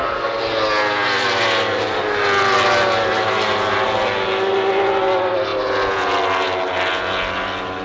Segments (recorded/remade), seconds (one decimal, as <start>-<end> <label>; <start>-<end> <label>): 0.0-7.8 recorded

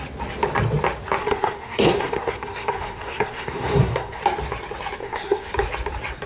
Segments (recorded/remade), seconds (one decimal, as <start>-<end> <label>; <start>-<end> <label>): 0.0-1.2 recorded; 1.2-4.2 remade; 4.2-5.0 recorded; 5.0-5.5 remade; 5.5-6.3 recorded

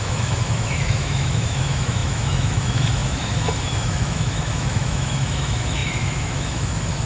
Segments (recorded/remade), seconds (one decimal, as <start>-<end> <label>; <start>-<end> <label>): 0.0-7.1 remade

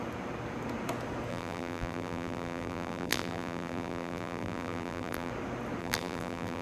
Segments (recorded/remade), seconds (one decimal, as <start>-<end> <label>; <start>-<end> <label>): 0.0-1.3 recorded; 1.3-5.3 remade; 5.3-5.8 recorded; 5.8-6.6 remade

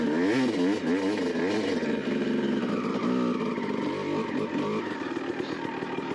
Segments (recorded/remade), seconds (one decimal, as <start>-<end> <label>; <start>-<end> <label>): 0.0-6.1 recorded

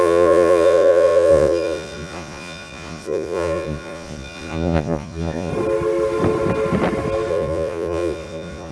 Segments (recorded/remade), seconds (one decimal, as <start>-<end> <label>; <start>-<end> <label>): 0.0-5.5 remade; 5.5-7.3 recorded; 7.3-8.7 remade